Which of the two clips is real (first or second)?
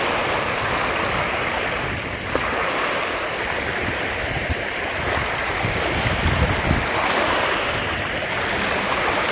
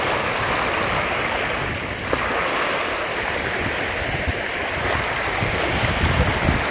second